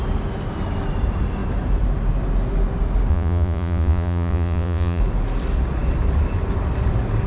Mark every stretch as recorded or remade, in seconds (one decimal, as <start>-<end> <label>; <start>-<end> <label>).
0.0-3.1 recorded; 3.1-5.0 remade; 5.0-7.3 recorded